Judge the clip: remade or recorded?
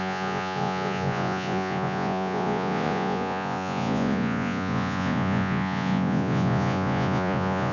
remade